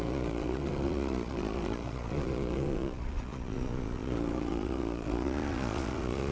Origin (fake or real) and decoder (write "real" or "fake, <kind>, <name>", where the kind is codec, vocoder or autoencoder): fake, vocoder, Vocos